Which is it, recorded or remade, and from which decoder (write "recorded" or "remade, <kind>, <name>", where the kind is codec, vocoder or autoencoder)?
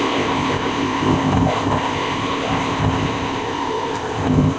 remade, codec, ZipCodec